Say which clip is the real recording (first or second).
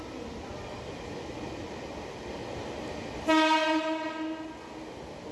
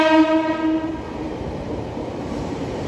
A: first